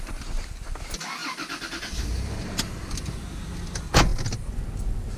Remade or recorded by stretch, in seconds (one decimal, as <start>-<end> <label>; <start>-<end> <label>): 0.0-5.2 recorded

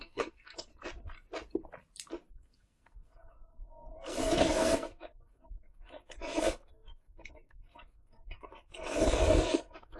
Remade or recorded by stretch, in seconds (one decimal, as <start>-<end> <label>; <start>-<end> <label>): 0.0-0.7 remade; 0.7-2.3 recorded; 2.3-10.0 remade

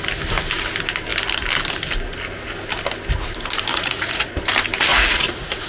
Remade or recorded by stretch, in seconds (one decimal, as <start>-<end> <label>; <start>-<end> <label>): 0.0-3.7 recorded; 3.7-4.3 remade; 4.3-4.9 recorded; 4.9-5.7 remade

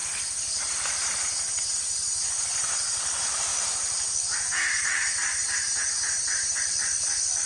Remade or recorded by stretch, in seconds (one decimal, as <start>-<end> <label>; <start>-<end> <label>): 0.0-5.2 recorded; 5.2-6.6 remade; 6.6-7.5 recorded